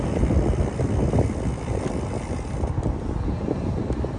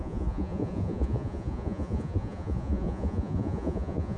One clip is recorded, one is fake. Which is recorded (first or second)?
first